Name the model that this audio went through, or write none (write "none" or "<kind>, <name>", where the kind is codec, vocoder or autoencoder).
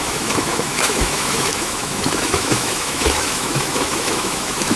autoencoder, DAC-VAE